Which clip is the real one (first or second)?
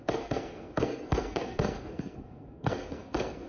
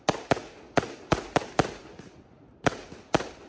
second